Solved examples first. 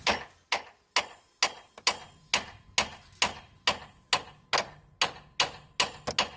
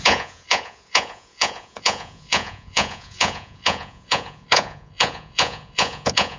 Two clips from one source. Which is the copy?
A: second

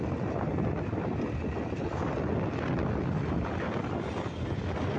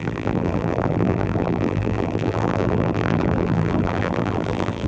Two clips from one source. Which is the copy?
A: second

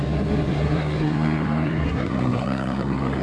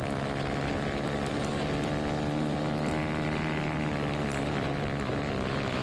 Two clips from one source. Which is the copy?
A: first